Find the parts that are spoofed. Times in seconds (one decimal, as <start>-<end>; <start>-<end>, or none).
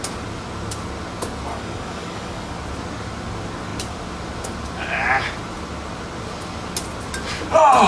1.5-2.5